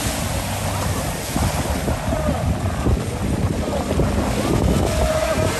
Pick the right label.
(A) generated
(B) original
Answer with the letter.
B